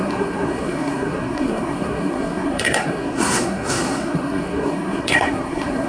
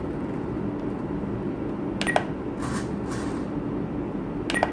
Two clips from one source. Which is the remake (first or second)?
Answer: first